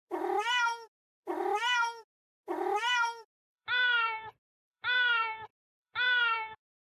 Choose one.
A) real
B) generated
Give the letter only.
B